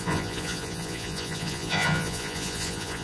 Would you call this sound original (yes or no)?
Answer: no